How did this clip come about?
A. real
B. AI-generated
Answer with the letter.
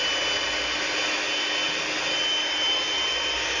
A